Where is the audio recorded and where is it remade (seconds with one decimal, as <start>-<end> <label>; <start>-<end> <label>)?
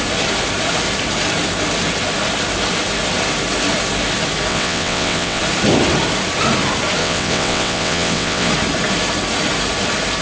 0.0-4.5 recorded; 4.5-5.4 remade; 5.4-7.0 recorded; 7.0-8.5 remade; 8.5-10.2 recorded